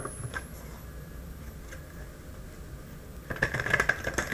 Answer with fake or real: real